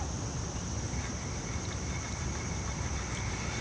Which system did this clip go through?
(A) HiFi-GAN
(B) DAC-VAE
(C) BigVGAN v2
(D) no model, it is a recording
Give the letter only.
D